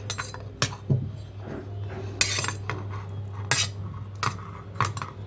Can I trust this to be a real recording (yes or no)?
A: yes